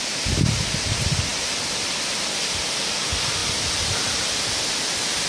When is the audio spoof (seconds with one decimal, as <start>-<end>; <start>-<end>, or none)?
3.4-4.5